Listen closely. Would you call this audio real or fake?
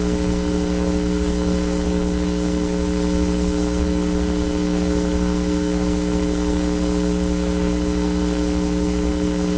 fake